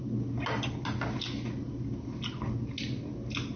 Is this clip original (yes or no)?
yes